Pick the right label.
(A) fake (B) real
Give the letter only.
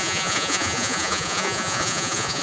A